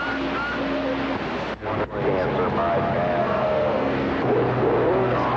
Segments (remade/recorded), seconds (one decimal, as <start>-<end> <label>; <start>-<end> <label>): 0.0-3.2 recorded; 3.2-4.1 remade; 4.1-5.4 recorded